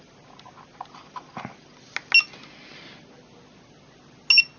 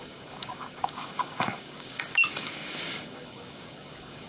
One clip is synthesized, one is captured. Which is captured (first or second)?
first